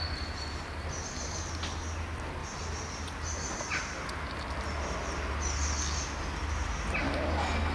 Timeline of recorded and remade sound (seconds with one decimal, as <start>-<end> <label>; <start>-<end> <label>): 0.0-7.7 recorded

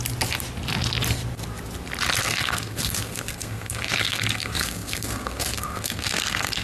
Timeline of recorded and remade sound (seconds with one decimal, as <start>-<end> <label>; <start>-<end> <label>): 0.0-2.2 recorded; 2.2-6.6 remade

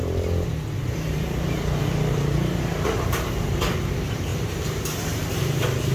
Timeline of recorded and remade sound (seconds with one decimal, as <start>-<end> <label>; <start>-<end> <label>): 0.0-0.8 recorded; 0.8-5.9 remade

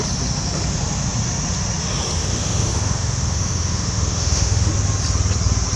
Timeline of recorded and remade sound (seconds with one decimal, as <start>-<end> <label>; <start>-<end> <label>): 0.0-2.2 recorded; 2.2-4.7 remade; 4.7-5.8 recorded

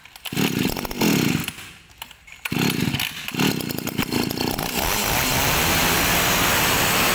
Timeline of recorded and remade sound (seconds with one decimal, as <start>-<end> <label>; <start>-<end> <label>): 0.0-7.1 recorded

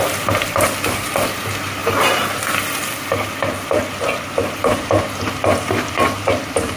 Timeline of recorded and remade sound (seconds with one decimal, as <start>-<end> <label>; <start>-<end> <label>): 0.0-6.8 recorded

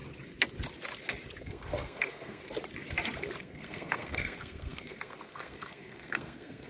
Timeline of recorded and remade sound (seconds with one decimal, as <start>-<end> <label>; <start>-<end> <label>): 0.0-1.4 recorded; 1.4-2.4 remade; 2.4-3.4 recorded; 3.4-6.7 remade

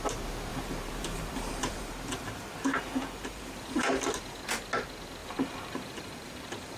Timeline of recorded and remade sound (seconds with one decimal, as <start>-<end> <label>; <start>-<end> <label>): 0.0-0.5 recorded; 0.5-4.0 remade; 4.0-5.2 recorded; 5.2-6.8 remade